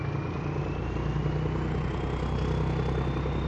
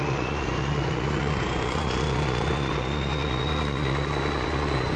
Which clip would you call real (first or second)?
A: first